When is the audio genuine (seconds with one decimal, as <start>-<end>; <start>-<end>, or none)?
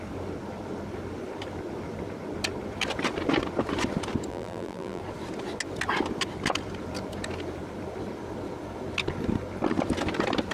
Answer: 0.0-4.3; 5.0-10.5